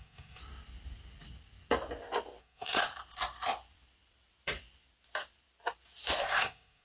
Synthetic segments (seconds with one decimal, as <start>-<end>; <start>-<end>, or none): 0.0-0.4; 2.4-2.9; 6.2-6.8